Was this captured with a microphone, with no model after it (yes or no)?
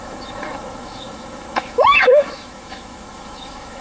no